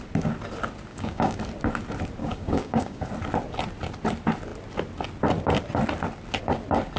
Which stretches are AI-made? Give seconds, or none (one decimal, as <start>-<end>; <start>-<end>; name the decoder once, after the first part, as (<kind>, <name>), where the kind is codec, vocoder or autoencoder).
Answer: 0.9-1.4 (codec, DAC); 2.2-3.1